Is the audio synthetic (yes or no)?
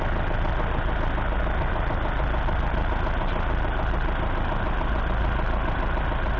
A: no